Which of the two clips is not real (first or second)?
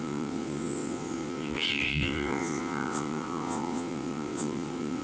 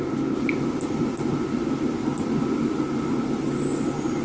first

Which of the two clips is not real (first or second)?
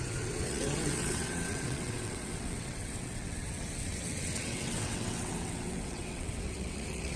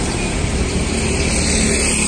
first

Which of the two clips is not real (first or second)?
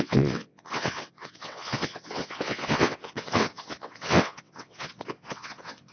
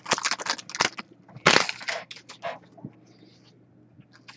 first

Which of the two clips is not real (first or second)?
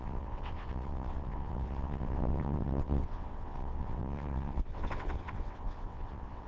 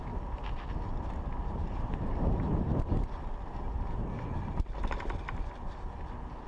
first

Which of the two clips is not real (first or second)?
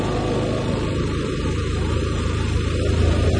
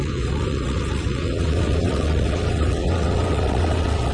second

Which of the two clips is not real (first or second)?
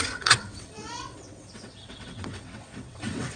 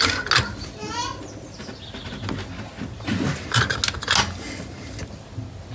first